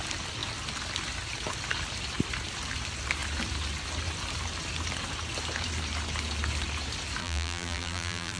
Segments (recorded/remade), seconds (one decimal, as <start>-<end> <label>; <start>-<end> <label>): 0.0-7.2 recorded; 7.2-8.4 remade